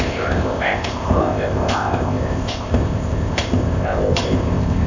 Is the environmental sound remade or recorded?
remade